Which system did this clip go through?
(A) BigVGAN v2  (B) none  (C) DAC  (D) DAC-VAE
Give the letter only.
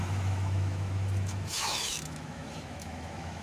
D